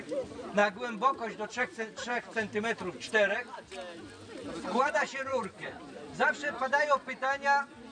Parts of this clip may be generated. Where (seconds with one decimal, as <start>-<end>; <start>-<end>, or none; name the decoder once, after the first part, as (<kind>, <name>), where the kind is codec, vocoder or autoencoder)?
5.3-5.8 (vocoder, Vocos)